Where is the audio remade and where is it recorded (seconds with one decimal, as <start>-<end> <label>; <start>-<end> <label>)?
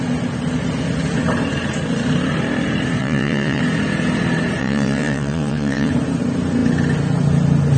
0.0-3.0 recorded; 3.0-3.6 remade; 3.6-4.6 recorded; 4.6-5.9 remade; 5.9-7.8 recorded